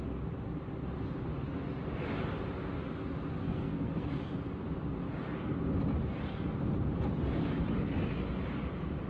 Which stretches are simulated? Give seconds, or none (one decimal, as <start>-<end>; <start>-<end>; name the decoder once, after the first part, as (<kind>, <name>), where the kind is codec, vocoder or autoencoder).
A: 3.4-4.1 (codec, SNAC)